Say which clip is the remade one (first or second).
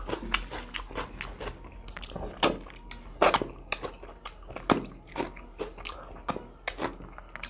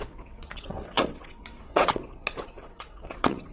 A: second